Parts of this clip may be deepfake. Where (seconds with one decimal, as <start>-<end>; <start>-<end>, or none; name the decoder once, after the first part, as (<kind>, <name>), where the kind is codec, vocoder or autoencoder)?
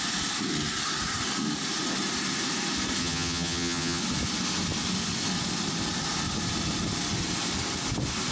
3.0-4.0 (vocoder, HiFi-GAN)